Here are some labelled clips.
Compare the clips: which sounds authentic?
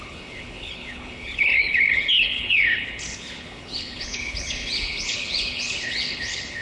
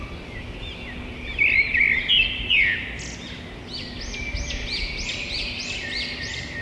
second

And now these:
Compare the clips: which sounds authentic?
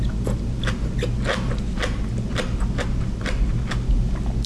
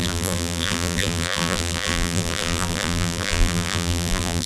first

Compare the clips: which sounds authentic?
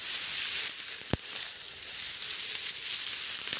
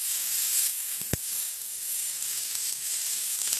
first